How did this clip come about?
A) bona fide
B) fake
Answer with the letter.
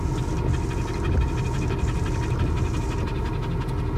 A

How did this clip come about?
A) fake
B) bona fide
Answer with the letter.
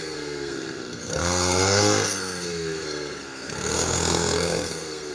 A